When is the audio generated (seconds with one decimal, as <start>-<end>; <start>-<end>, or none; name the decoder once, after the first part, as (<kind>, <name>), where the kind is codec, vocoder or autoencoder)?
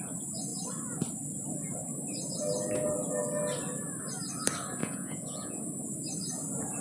4.8-5.6 (vocoder, Vocos)